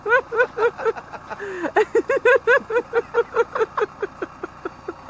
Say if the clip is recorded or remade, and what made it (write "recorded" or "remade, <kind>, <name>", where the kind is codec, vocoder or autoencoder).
recorded